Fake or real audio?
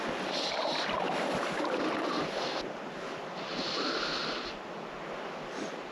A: real